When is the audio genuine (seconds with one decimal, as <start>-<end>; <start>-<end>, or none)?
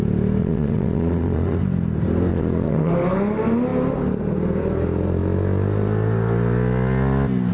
0.0-0.4; 1.6-2.3; 2.9-7.5